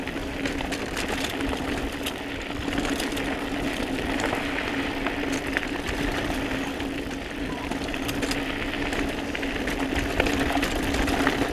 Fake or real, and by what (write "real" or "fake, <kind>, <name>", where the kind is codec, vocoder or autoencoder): real